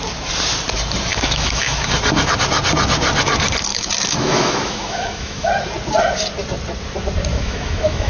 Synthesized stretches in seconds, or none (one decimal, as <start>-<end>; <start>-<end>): 1.1-1.9; 3.7-5.5; 7.3-8.1